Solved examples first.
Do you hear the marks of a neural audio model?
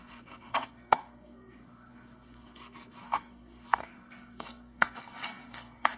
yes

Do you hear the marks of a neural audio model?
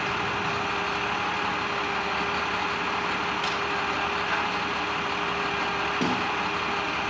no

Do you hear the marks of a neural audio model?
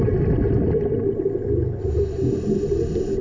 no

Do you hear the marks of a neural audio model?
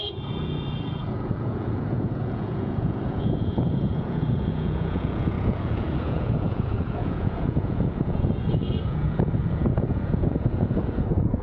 yes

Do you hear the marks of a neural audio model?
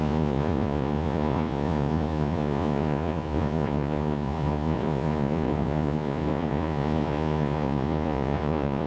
yes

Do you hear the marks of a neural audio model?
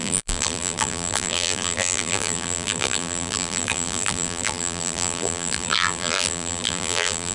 yes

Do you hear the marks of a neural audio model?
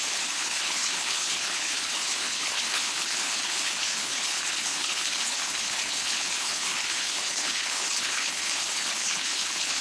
yes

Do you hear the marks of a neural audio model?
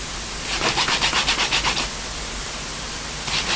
yes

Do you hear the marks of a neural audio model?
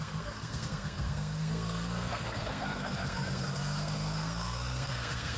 yes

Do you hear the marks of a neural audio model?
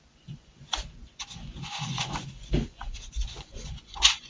yes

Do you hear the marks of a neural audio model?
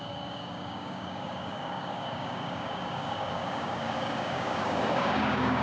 yes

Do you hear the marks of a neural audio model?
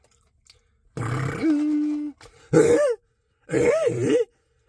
no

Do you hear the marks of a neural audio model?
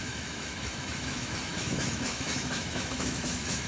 yes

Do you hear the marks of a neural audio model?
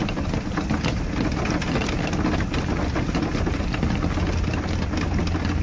no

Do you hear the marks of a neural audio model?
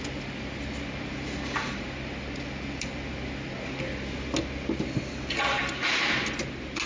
no